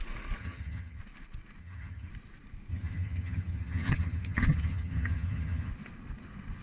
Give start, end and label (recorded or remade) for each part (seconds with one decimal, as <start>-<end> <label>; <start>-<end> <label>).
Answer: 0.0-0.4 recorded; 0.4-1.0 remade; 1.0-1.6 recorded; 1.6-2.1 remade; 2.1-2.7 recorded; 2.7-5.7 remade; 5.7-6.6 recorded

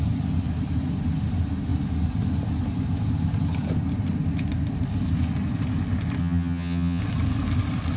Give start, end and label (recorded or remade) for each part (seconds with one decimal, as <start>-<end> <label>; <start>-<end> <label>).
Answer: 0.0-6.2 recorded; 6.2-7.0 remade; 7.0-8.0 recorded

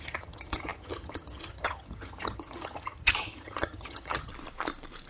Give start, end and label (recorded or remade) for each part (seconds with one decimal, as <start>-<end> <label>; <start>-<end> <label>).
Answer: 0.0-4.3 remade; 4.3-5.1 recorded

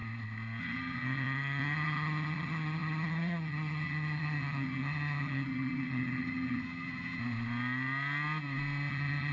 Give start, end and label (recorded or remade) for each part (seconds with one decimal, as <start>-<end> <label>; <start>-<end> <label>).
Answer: 0.0-0.6 recorded; 0.6-7.2 remade; 7.2-8.9 recorded; 8.9-9.3 remade

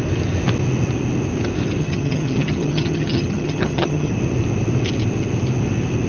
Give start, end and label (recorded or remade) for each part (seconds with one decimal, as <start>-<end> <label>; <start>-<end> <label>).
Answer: 0.0-1.8 recorded; 1.8-4.1 remade; 4.1-6.1 recorded

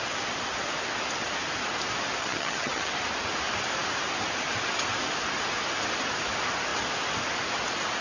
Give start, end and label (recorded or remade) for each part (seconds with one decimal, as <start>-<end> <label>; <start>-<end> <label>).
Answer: 0.0-2.2 recorded; 2.2-2.9 remade; 2.9-8.0 recorded

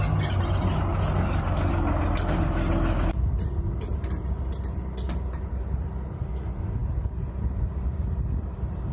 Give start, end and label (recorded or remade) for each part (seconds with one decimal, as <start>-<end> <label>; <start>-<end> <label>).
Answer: 0.0-8.9 recorded

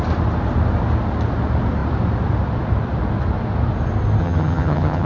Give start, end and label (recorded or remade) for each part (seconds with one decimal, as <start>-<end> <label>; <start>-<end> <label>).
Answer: 0.0-4.2 recorded; 4.2-5.1 remade